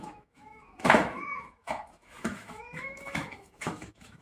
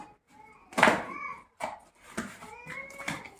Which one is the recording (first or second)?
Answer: second